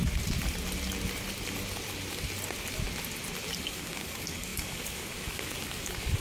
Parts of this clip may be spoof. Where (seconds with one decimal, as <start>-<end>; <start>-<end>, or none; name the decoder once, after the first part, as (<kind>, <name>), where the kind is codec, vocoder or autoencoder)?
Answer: 3.6-6.2 (codec, DAC)